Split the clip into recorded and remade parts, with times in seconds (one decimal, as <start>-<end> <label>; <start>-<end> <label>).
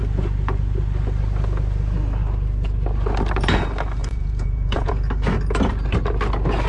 0.0-4.0 recorded; 4.0-4.9 remade; 4.9-6.7 recorded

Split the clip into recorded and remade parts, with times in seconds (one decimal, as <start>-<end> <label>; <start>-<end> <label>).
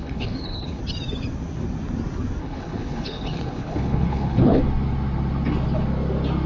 0.0-0.8 remade; 0.8-2.4 recorded; 2.4-4.6 remade; 4.6-6.5 recorded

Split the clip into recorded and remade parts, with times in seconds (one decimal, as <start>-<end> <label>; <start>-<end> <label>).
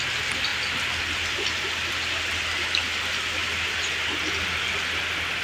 0.0-5.4 recorded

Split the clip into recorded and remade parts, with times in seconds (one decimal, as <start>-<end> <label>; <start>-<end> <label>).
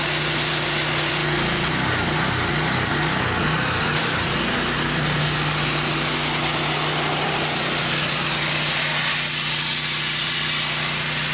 0.0-11.3 recorded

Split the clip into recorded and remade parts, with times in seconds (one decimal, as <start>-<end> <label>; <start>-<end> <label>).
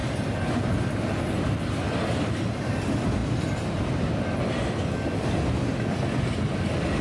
0.0-7.0 recorded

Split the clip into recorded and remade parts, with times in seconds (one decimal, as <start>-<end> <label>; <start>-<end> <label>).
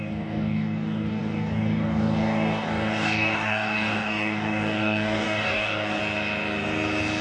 0.0-6.0 remade; 6.0-7.2 recorded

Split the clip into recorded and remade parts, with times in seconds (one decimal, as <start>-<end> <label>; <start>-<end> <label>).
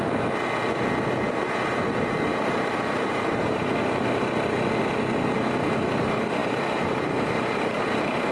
0.0-2.3 recorded; 2.3-3.8 remade; 3.8-6.4 recorded; 6.4-7.8 remade; 7.8-8.3 recorded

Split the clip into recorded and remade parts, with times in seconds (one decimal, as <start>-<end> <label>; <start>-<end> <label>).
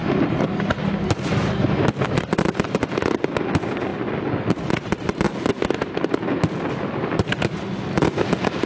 0.0-8.7 recorded